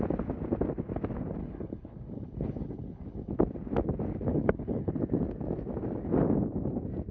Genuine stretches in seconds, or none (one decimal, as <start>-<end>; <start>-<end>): 0.0-1.4; 3.3-4.3; 4.9-7.1

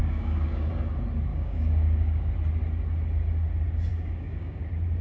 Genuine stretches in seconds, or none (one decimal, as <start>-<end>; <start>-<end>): 0.7-1.3; 2.3-3.9; 4.6-5.0

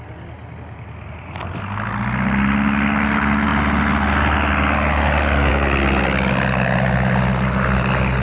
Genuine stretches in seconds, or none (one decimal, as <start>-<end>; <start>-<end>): 0.0-8.2